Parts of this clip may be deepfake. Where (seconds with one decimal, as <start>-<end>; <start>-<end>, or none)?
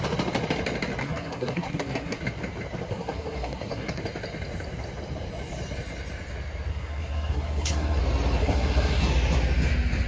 1.0-2.2; 2.9-4.0; 6.7-8.0; 8.4-9.0